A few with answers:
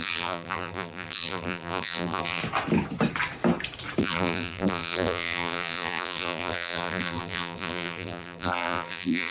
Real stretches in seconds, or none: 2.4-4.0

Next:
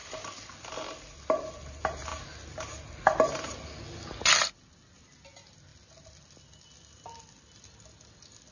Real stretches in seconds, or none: 0.0-8.5

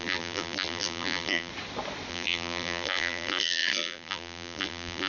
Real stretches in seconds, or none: 1.5-2.1

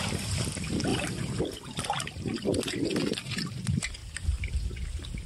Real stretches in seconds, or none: 0.0-0.9; 1.4-4.0; 4.5-5.3

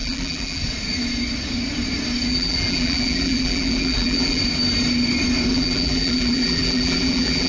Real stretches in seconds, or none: 0.6-2.3; 4.4-5.5

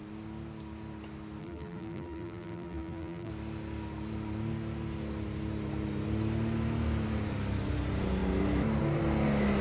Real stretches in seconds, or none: 0.0-1.4; 3.3-9.6

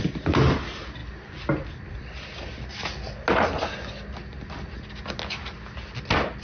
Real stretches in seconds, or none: 0.0-1.0; 1.7-6.4